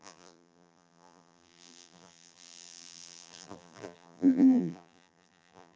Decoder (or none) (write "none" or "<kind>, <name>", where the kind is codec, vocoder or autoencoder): vocoder, BigVGAN v2